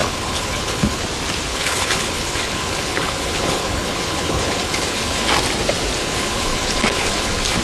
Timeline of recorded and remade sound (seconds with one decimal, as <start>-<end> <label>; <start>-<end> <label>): 0.0-1.0 remade; 1.0-1.5 recorded; 1.5-5.3 remade; 5.3-6.0 recorded; 6.0-7.6 remade